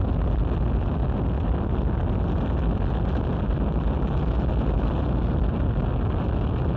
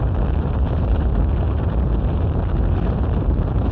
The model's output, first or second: second